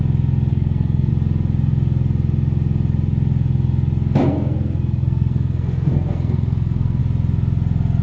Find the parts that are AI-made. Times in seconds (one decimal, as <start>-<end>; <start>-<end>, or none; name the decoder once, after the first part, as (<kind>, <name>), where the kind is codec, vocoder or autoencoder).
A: 0.5-1.1 (codec, SNAC); 4.2-7.0

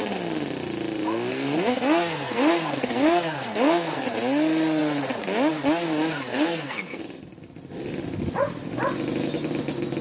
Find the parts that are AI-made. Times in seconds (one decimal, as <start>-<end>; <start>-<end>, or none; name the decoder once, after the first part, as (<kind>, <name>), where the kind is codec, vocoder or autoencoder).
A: 1.3-4.0 (codec, SNAC); 6.3-7.0

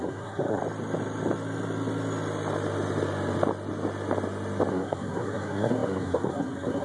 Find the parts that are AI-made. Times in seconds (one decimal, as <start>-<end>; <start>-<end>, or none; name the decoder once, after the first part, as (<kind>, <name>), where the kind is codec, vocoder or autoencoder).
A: 0.0-0.6 (codec, SNAC); 4.7-6.8

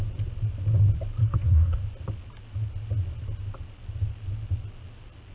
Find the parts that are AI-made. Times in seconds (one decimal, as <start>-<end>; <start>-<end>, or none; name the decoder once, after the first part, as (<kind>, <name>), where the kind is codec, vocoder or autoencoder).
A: 1.2-1.8 (codec, SNAC)